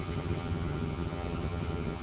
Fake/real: fake